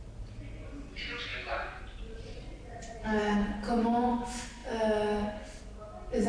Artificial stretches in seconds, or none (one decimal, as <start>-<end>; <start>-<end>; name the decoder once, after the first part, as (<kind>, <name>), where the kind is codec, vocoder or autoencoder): none